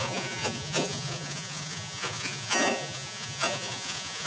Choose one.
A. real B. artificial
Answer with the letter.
B